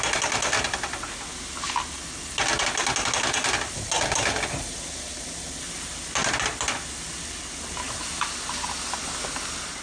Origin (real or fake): real